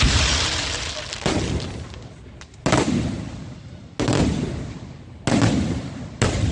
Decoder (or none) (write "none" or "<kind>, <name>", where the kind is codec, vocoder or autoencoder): none